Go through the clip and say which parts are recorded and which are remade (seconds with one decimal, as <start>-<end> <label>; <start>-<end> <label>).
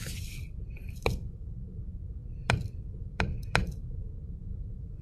0.0-0.8 recorded; 0.8-1.8 remade; 1.8-2.2 recorded; 2.2-5.0 remade